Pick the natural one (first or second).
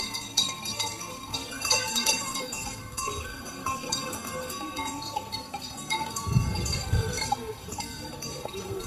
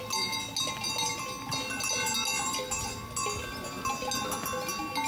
second